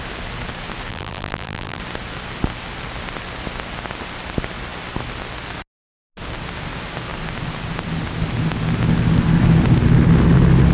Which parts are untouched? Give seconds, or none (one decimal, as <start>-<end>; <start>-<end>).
0.0-0.9; 1.8-10.7